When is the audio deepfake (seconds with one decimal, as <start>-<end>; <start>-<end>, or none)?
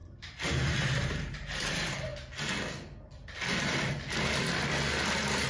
1.0-2.1